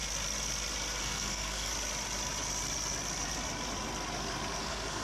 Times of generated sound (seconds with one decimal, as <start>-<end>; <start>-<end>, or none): 1.0-1.7; 4.6-5.0